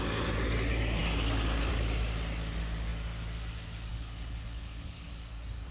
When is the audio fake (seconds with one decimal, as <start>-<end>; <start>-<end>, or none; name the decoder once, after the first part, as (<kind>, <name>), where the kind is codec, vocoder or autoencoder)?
3.9-5.1 (codec, HILCodec)